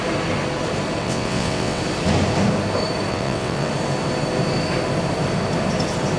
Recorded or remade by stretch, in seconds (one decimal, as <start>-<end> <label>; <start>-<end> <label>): 0.0-1.0 recorded; 1.0-1.8 remade; 1.8-3.1 recorded; 3.1-3.7 remade; 3.7-6.2 recorded